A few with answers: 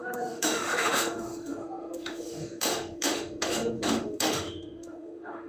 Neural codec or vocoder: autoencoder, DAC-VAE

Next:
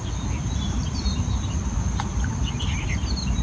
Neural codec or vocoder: none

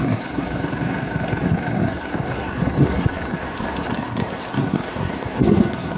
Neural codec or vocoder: codec, SNAC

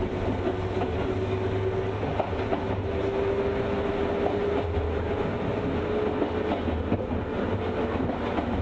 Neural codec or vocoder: none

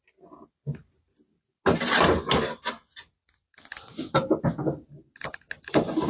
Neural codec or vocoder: none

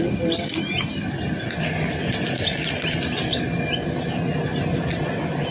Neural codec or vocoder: none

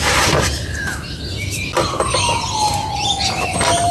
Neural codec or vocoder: none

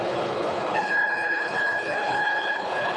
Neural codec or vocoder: codec, HILCodec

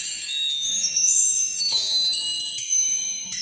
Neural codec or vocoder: autoencoder, DAC-VAE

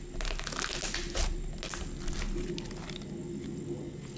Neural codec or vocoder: none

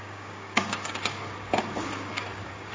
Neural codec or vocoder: codec, DAC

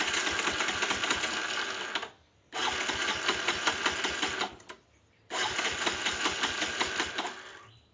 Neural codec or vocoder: none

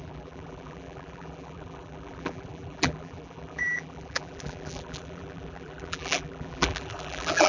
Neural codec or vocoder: vocoder, BigVGAN v2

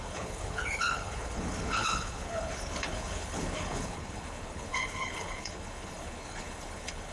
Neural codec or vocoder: codec, HILCodec